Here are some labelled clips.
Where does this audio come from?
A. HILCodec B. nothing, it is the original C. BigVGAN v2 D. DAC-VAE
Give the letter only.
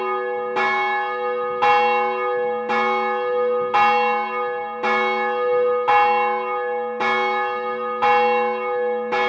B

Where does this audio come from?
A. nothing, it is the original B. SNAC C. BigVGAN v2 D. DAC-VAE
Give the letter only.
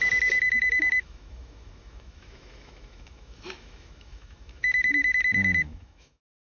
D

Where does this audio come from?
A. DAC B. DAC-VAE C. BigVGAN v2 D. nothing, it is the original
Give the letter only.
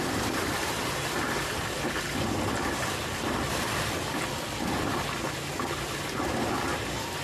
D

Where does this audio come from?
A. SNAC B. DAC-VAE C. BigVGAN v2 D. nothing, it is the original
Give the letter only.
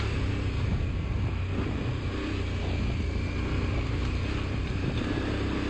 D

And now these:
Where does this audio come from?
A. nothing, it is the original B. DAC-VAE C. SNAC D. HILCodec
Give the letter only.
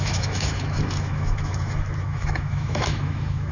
B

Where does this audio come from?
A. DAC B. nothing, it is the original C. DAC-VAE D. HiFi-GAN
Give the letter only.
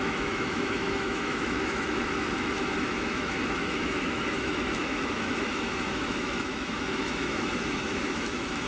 C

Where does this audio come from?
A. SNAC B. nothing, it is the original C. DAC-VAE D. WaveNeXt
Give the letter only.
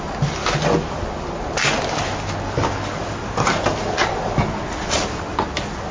B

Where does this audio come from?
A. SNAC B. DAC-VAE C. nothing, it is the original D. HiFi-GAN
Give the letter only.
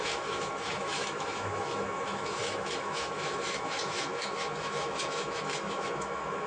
B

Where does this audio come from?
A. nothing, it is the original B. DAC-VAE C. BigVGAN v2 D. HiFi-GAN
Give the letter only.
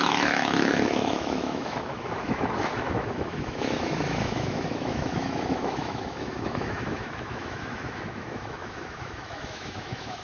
B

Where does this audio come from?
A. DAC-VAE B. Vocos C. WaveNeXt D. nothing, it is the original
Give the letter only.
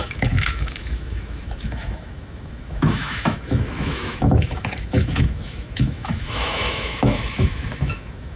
A